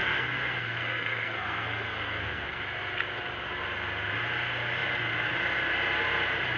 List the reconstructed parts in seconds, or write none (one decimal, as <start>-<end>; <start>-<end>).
0.0-2.6